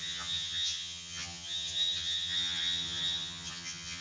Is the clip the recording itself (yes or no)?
no